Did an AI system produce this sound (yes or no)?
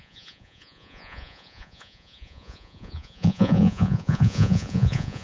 yes